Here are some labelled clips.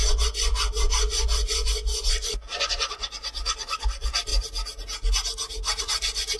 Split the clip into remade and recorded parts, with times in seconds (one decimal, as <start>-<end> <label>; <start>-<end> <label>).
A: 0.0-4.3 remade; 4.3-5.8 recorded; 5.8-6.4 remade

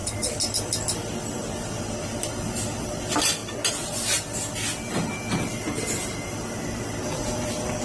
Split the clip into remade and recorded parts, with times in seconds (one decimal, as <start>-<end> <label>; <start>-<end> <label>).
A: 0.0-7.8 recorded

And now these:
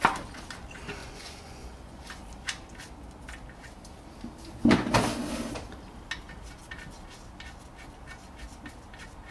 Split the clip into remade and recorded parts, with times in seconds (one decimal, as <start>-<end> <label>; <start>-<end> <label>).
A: 0.0-1.0 recorded; 1.0-2.0 remade; 2.0-9.3 recorded